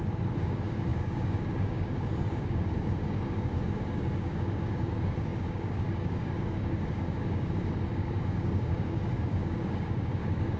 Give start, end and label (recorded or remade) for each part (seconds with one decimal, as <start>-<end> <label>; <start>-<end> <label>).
0.0-10.6 remade